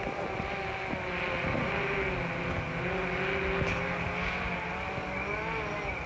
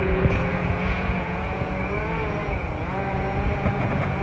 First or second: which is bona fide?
first